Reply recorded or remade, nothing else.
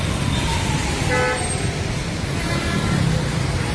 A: recorded